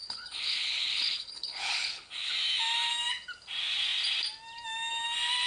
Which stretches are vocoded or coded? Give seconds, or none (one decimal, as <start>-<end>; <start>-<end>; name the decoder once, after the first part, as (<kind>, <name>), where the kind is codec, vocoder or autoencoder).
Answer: 0.0-2.3 (codec, HILCodec)